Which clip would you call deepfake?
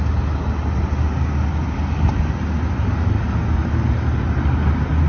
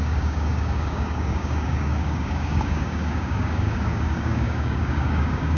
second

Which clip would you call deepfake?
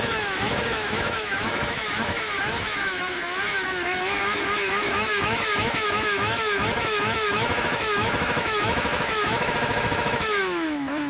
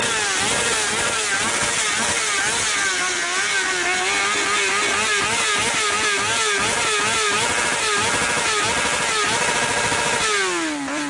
first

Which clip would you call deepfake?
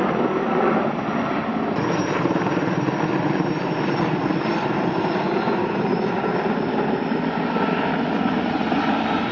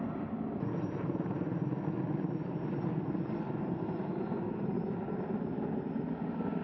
first